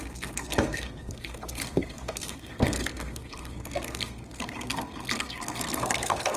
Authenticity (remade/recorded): remade